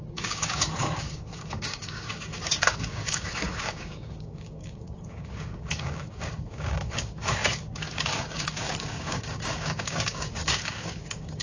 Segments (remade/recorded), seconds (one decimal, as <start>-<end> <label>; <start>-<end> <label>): 0.0-11.4 remade